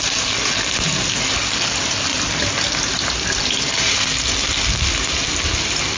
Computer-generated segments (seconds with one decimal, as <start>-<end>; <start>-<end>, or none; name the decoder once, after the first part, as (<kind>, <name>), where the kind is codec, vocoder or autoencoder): none

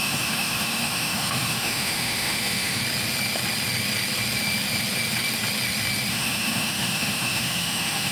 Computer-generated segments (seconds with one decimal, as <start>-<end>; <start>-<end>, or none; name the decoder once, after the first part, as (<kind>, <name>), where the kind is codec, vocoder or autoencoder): 0.0-2.8 (autoencoder, DAC-VAE); 6.1-8.1